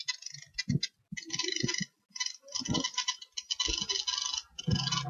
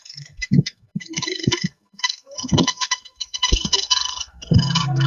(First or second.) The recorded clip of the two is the first